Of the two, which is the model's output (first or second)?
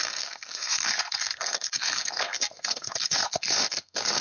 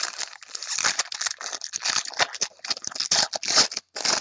first